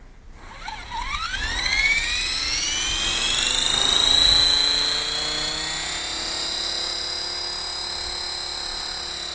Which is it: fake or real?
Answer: real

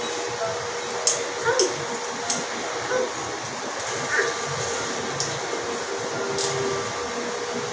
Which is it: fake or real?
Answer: real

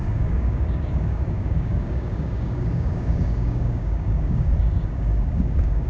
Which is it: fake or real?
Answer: fake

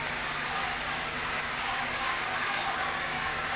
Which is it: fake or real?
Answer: fake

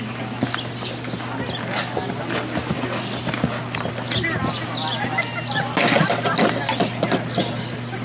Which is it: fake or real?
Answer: real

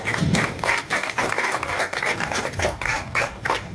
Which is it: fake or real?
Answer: fake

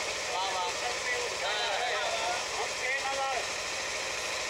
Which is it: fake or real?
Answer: real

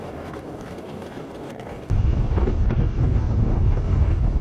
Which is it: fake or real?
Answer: fake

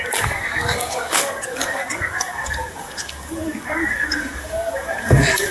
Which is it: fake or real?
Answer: fake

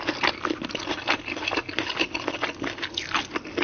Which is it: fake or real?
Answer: real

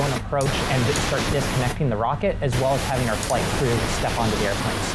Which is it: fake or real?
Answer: real